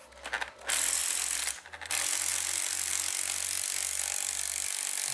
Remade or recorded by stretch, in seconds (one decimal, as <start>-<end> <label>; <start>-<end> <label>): 0.0-5.1 recorded